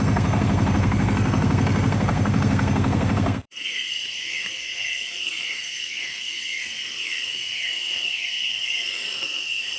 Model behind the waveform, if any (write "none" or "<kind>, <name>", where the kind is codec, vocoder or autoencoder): codec, SNAC